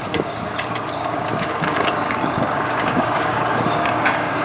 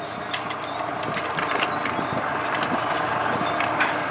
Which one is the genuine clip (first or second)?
second